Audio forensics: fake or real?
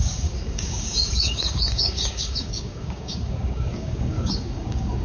fake